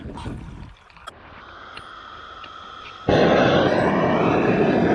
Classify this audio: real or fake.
real